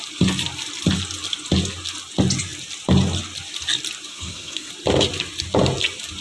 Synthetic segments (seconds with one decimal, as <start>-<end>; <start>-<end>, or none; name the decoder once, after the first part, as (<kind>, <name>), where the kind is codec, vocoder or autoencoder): 4.1-4.7 (codec, SNAC)